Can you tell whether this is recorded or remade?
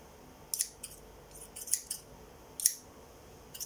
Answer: recorded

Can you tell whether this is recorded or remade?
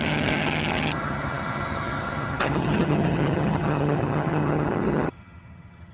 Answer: remade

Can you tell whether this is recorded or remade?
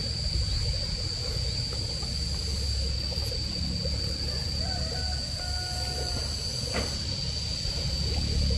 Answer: recorded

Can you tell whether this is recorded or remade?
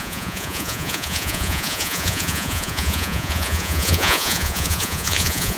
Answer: remade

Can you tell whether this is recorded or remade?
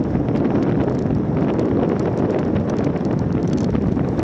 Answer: recorded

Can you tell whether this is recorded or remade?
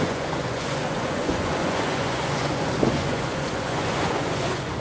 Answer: remade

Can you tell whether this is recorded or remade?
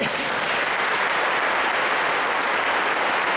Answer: recorded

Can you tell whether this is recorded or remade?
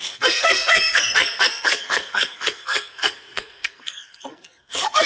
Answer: remade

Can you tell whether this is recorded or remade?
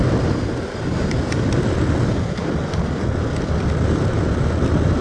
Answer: recorded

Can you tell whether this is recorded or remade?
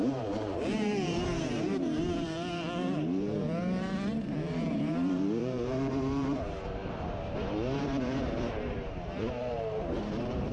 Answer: remade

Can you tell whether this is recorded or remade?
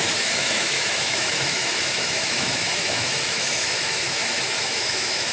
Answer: remade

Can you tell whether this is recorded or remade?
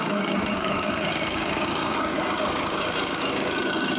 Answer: remade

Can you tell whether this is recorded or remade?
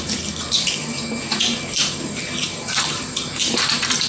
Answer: remade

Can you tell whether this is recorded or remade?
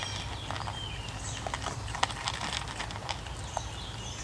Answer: recorded